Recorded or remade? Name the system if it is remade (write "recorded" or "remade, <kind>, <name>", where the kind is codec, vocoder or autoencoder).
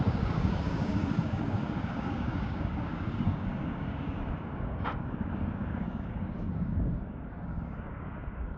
remade, codec, DAC